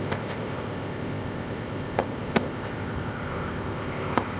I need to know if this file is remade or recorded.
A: remade